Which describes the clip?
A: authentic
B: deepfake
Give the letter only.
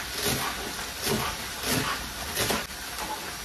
A